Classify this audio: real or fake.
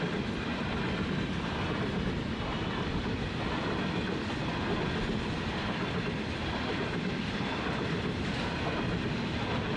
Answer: fake